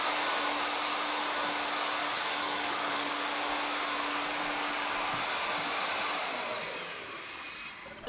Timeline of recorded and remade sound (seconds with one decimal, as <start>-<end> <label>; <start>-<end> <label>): 0.0-2.0 recorded; 2.0-3.1 remade; 3.1-8.1 recorded